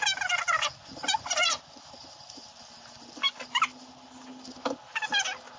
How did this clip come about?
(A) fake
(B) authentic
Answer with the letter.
B